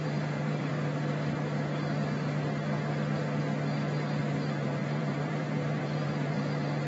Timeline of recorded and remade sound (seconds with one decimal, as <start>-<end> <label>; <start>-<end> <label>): 0.0-0.7 remade; 0.7-4.2 recorded; 4.2-6.9 remade